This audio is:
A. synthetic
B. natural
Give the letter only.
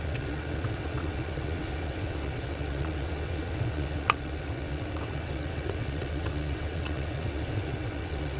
A